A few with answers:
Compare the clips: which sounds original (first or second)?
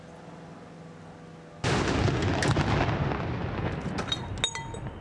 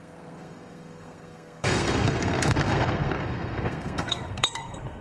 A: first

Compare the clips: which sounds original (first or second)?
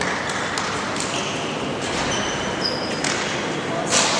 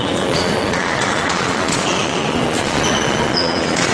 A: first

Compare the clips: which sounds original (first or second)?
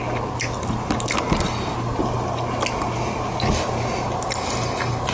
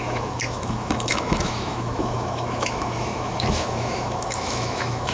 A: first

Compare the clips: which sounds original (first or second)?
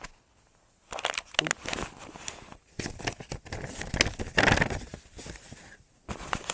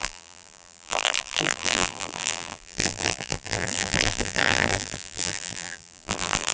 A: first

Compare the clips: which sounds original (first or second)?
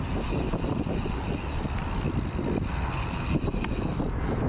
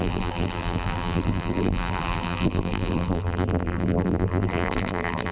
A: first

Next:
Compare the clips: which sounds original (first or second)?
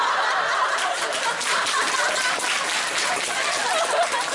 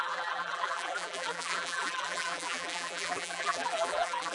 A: first